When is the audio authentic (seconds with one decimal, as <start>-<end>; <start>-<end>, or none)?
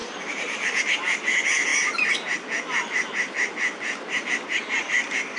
0.8-5.4